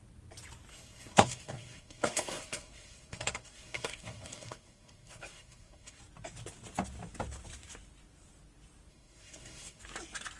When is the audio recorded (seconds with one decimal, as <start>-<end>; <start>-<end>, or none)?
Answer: 0.0-0.7; 6.0-8.9; 9.8-10.4